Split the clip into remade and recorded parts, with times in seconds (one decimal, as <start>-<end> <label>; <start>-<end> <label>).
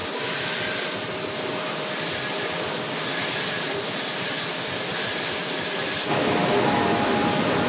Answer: 0.0-7.7 recorded